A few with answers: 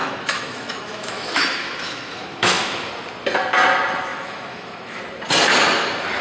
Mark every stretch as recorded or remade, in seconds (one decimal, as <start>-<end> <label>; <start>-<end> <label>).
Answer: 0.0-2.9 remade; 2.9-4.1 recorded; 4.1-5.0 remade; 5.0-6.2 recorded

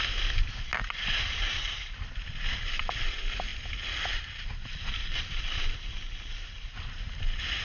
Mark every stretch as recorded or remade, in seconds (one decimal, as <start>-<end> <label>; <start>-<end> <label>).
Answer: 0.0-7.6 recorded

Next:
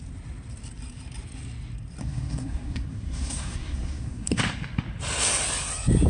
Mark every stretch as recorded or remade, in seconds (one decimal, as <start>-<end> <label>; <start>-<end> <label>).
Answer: 0.0-2.0 recorded; 2.0-4.4 remade; 4.4-6.1 recorded